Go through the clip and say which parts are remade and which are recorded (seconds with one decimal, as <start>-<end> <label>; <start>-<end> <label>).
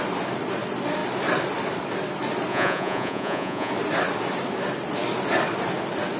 0.0-2.5 recorded; 2.5-3.7 remade; 3.7-6.2 recorded